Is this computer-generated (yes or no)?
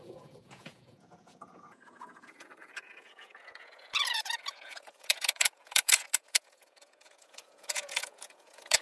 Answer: yes